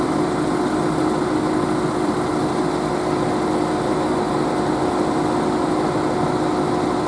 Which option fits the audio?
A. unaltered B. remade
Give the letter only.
A